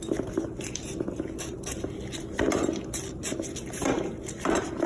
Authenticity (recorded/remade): recorded